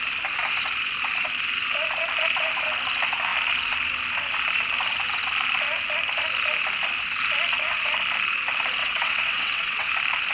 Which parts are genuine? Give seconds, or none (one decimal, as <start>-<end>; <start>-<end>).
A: 0.0-8.8; 9.9-10.3